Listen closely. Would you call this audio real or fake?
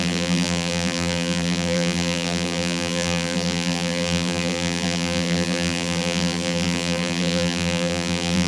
fake